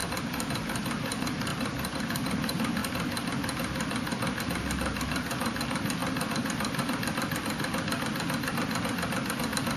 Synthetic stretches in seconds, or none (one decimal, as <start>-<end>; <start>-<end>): 0.0-1.5; 2.0-2.8; 4.4-6.0